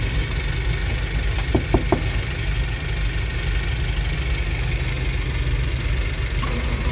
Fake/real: real